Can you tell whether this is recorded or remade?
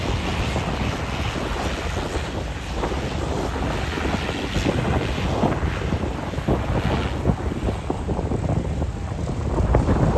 recorded